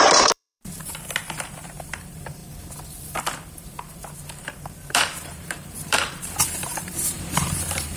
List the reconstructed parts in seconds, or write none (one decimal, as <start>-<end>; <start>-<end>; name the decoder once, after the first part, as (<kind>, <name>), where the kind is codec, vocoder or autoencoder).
0.0-2.4 (vocoder, BigVGAN v2); 4.4-8.0